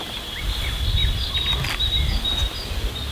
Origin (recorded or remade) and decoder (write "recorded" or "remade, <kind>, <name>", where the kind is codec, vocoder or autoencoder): remade, vocoder, BigVGAN v2